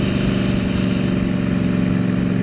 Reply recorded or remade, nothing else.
recorded